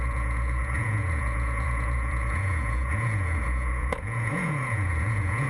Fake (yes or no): yes